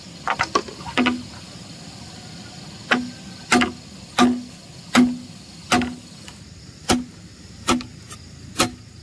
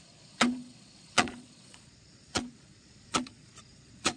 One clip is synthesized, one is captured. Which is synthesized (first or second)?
second